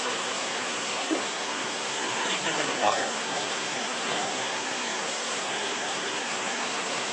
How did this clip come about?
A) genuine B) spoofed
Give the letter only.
B